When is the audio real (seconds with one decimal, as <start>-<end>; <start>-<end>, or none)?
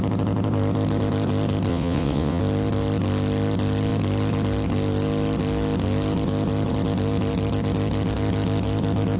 0.0-1.7; 2.4-9.2